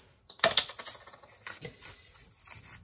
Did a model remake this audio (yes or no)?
no